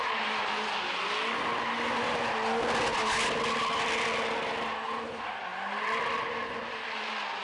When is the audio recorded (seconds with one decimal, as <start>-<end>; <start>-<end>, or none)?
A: 0.0-7.4